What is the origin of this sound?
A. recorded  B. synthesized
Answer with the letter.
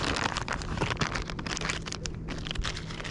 A